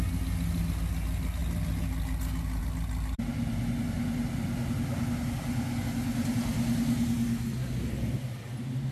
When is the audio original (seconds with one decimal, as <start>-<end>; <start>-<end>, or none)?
0.0-8.9